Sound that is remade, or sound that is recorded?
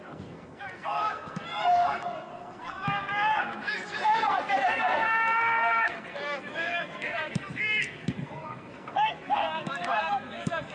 remade